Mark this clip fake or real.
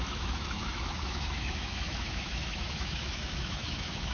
fake